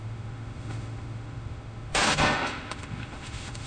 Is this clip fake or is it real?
fake